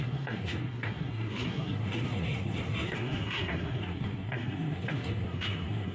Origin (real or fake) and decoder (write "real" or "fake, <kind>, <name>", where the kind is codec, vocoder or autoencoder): fake, codec, SNAC